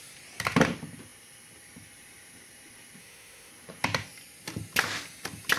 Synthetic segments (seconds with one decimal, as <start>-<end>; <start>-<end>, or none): 3.0-3.5